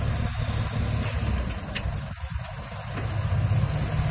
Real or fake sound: real